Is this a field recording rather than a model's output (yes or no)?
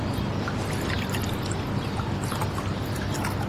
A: yes